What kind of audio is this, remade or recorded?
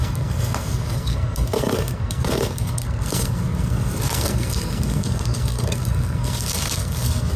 remade